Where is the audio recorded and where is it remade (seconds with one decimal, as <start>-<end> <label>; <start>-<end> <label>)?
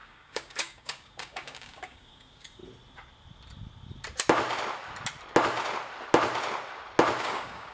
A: 0.0-2.6 remade; 2.6-7.2 recorded; 7.2-7.7 remade